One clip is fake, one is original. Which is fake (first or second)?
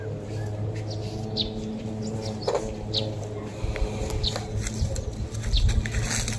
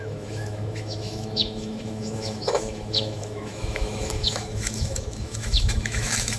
second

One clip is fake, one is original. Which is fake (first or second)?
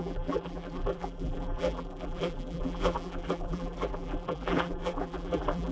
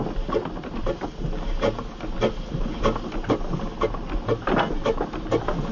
first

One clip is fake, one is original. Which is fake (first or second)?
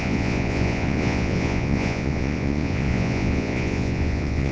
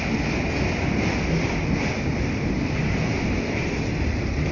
first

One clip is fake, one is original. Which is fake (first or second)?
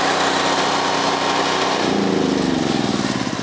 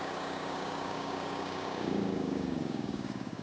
second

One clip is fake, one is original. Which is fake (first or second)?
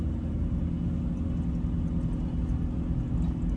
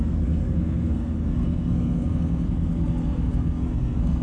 second